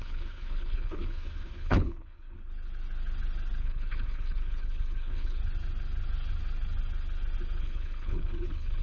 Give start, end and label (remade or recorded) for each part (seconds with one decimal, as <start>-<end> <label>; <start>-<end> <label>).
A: 0.0-2.5 remade; 2.5-3.6 recorded; 3.6-5.4 remade; 5.4-7.6 recorded; 7.6-8.8 remade